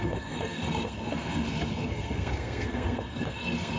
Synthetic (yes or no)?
yes